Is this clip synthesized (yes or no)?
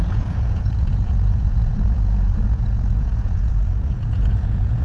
yes